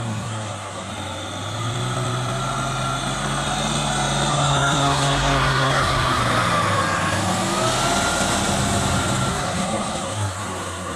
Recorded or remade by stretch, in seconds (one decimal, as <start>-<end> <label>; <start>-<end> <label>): 0.0-0.9 remade; 0.9-4.3 recorded; 4.3-6.2 remade; 6.2-9.3 recorded; 9.3-11.0 remade